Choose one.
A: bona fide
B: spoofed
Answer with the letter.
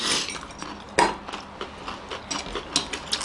A